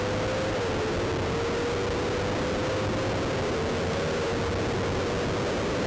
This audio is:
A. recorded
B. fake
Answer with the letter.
A